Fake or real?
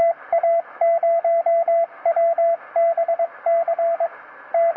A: real